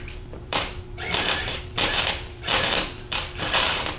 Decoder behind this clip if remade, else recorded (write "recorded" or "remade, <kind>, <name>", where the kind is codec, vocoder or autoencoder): remade, vocoder, BigVGAN v2